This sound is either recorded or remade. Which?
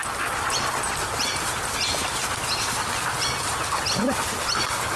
recorded